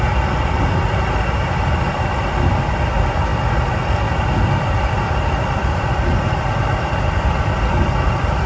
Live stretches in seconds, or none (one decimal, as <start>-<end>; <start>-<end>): none